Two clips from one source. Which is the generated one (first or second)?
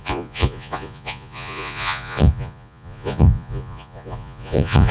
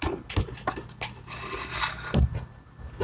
first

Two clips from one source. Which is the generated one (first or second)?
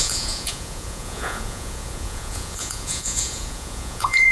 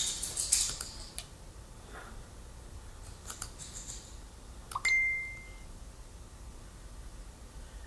first